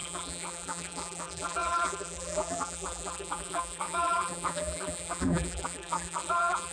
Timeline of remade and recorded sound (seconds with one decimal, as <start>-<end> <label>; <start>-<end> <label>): 0.0-6.7 remade

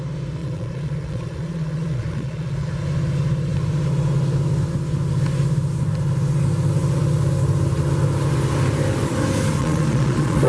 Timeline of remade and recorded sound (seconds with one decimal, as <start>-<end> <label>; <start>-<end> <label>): 0.0-0.4 recorded; 0.4-2.7 remade; 2.7-9.6 recorded; 9.6-10.5 remade

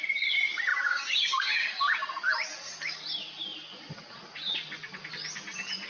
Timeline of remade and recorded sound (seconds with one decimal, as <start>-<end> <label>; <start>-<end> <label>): 0.0-0.7 recorded; 0.7-1.8 remade; 1.8-5.9 recorded

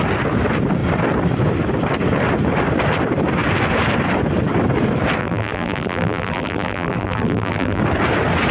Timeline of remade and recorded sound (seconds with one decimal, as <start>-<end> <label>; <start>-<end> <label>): 0.0-5.2 recorded; 5.2-7.8 remade; 7.8-8.5 recorded

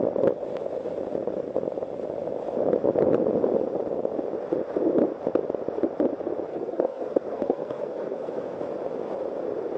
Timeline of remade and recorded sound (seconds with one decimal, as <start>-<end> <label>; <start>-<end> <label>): 0.0-6.5 recorded; 6.5-8.6 remade; 8.6-9.8 recorded

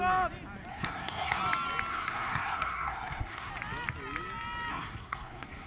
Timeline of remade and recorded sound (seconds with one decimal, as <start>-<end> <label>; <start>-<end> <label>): 0.0-0.7 recorded; 0.7-1.4 remade; 1.4-1.9 recorded; 1.9-3.5 remade; 3.5-4.7 recorded; 4.7-5.7 remade

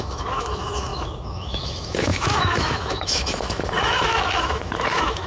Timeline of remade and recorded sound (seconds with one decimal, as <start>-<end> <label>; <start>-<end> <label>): 0.0-5.3 remade

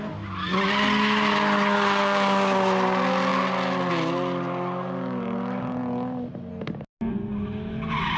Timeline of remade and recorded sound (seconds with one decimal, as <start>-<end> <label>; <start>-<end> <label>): 0.0-8.2 recorded